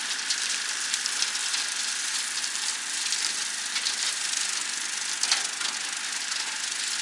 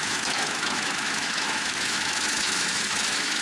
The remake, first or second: second